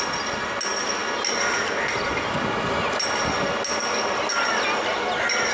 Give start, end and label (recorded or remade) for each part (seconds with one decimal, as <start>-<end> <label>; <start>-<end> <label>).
0.0-5.5 recorded